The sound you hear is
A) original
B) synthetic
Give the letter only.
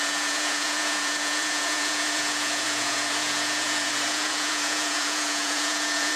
B